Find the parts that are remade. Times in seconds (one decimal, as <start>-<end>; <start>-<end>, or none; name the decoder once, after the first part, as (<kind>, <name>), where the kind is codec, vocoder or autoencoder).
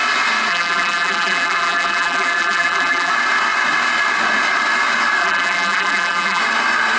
0.5-3.1 (vocoder, BigVGAN v2); 5.2-6.4